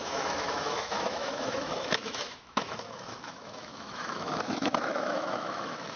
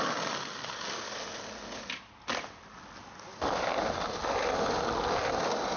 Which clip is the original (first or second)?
second